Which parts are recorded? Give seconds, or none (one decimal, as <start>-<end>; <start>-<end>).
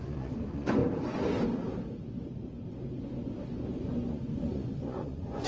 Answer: 0.8-4.1